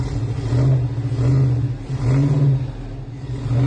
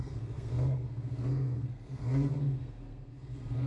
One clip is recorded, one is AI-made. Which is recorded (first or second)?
first